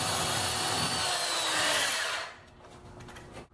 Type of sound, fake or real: real